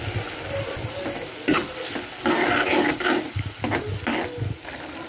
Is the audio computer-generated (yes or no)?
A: no